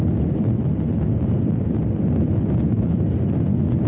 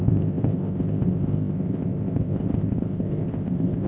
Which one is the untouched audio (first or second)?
first